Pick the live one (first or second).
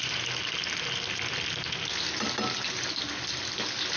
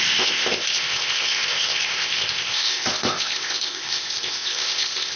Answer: first